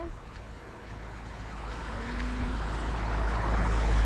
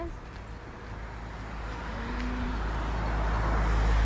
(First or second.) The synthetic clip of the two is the first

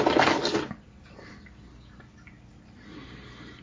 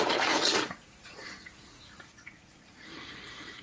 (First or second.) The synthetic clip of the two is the second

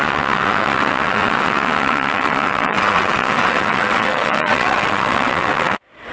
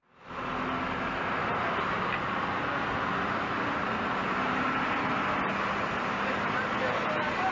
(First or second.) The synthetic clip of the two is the first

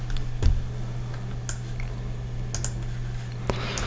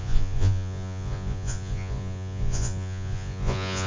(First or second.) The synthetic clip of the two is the second